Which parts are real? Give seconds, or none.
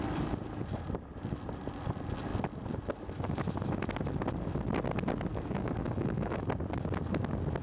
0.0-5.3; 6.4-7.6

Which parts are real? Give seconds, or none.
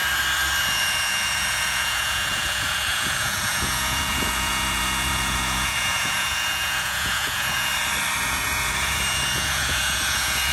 0.0-0.7; 7.7-8.2